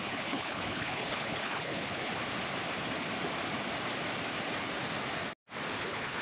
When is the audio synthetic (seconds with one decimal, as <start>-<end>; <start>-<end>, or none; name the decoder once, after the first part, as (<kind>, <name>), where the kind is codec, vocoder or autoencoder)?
0.0-2.1 (codec, HILCodec); 5.8-6.2